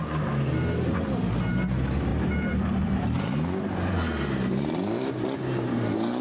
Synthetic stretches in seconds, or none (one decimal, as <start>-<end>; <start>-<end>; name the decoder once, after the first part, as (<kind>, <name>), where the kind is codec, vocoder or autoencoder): 2.1-5.8 (vocoder, BigVGAN v2)